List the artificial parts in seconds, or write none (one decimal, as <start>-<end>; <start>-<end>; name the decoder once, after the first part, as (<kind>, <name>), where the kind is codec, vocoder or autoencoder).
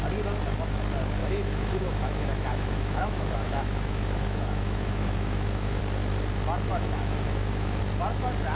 1.2-5.8 (autoencoder, DAC-VAE); 6.7-7.8